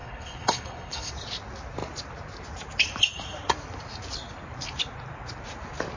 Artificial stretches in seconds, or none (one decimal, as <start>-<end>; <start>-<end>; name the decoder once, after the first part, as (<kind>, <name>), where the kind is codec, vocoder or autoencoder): 0.0-1.1 (codec, HILCodec)